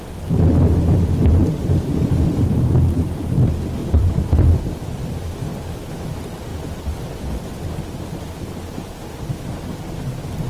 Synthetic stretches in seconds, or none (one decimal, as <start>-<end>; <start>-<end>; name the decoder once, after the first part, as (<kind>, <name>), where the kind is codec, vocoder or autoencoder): 1.4-2.7 (vocoder, BigVGAN v2); 3.8-4.5; 5.5-6.0